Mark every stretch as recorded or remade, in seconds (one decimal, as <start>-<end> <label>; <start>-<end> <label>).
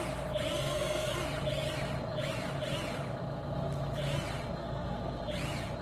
0.0-0.6 recorded; 0.6-1.1 remade; 1.1-4.6 recorded; 4.6-5.2 remade; 5.2-5.8 recorded